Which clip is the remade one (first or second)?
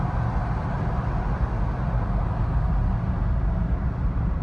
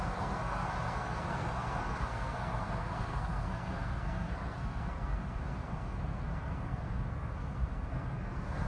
second